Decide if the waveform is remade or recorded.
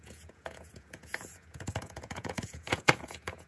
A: remade